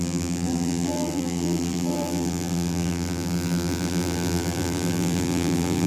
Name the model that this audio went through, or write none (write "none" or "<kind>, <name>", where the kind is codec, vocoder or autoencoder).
vocoder, BigVGAN v2